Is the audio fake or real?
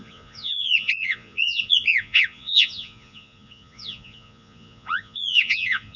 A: fake